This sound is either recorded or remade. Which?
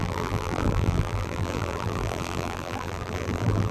remade